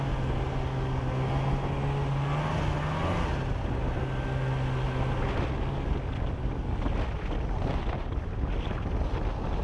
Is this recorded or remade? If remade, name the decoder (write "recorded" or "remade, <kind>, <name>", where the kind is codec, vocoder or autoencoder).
recorded